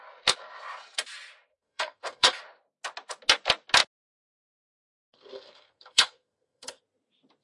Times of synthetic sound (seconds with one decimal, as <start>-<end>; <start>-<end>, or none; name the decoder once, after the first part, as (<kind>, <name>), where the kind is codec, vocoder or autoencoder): 1.5-2.4 (codec, SNAC); 4.3-6.8